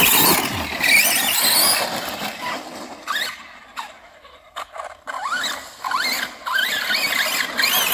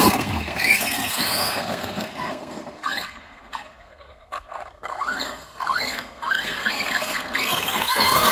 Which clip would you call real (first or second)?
first